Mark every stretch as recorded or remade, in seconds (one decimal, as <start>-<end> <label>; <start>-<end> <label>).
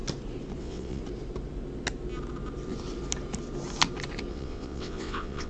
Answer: 0.0-0.6 recorded; 0.6-1.0 remade; 1.0-4.3 recorded; 4.3-5.5 remade